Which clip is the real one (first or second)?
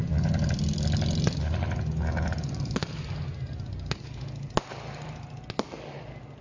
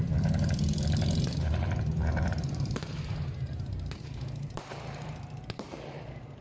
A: first